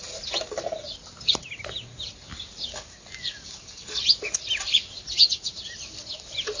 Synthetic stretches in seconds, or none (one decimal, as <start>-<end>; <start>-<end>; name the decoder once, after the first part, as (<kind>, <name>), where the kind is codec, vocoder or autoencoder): none